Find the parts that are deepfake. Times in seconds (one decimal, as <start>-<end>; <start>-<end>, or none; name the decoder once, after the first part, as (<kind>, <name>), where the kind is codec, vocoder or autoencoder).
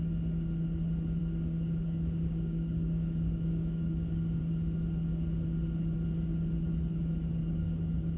1.2-4.4 (codec, DAC); 7.4-8.2